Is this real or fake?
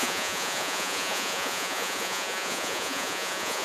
fake